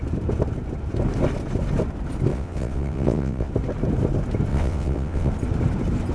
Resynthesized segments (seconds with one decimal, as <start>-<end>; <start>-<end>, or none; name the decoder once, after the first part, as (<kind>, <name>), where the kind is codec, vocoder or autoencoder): 2.3-3.5 (vocoder, WaveNeXt); 4.5-5.3